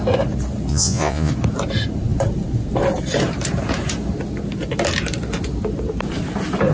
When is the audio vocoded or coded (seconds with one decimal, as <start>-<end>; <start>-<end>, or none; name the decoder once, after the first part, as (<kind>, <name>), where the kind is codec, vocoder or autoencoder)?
0.7-1.3 (vocoder, Vocos)